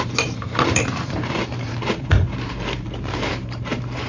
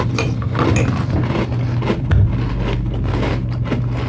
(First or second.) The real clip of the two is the second